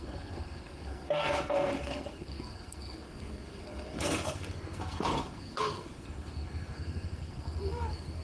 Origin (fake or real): fake